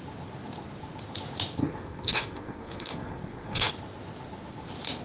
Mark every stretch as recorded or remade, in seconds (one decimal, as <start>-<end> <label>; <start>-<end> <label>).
0.0-1.6 recorded; 1.6-3.7 remade; 3.7-5.0 recorded